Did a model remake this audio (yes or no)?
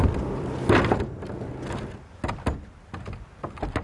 no